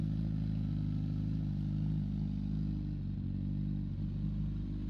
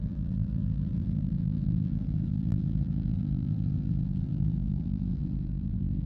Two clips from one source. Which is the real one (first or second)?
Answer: first